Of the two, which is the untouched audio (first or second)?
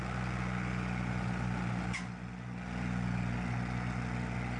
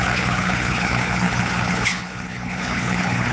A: first